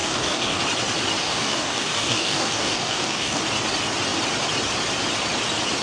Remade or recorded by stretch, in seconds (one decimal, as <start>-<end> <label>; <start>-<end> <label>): 0.0-0.6 remade; 0.6-1.2 recorded; 1.2-3.4 remade; 3.4-5.8 recorded